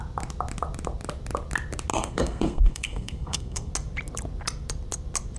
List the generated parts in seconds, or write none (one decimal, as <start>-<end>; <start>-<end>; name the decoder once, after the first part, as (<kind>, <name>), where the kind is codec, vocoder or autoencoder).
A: 1.9-3.7 (codec, SNAC)